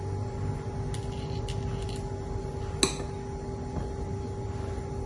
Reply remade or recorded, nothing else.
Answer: recorded